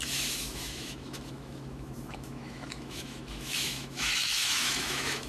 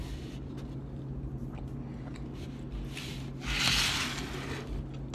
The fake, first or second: first